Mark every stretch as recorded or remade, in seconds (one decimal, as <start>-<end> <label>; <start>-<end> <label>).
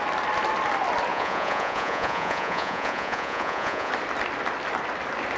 0.0-1.1 recorded; 1.1-3.9 remade; 3.9-5.4 recorded